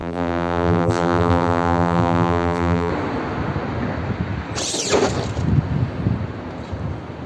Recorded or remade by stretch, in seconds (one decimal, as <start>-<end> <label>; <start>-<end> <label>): 0.0-2.9 remade; 2.9-7.3 recorded